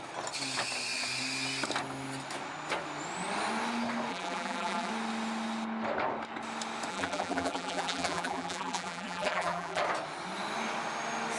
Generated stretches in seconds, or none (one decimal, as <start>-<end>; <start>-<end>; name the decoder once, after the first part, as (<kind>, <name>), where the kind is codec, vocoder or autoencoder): 4.1-4.9 (vocoder, BigVGAN v2); 6.9-9.8